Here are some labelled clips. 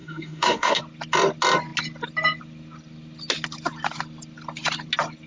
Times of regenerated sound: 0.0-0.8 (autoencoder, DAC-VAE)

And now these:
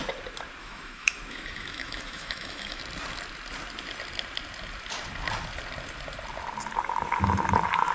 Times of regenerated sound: 0.6-2.8 (autoencoder, DAC-VAE)

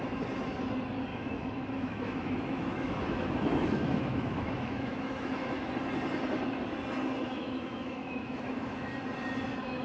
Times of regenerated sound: 1.1-5.7 (autoencoder, DAC-VAE); 7.2-8.9

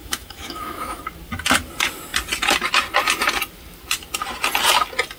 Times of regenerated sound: 0.0-1.0 (autoencoder, DAC-VAE)

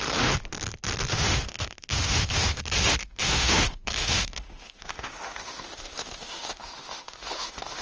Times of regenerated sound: 1.1-2.6 (autoencoder, DAC-VAE); 3.0-7.8

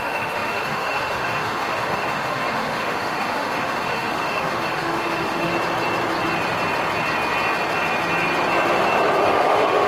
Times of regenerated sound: 0.0-5.5 (autoencoder, DAC-VAE); 9.2-9.9